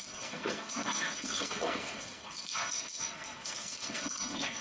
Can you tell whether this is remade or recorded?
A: remade